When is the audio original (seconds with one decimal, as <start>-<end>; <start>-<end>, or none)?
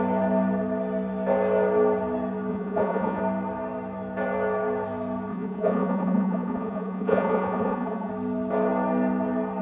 0.0-2.5; 3.2-5.3; 8.1-9.6